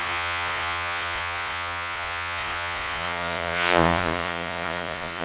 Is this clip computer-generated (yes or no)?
yes